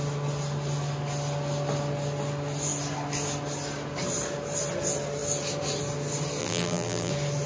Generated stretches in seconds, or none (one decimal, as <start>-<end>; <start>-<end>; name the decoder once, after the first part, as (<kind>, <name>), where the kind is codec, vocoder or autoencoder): 6.4-7.1 (vocoder, BigVGAN v2)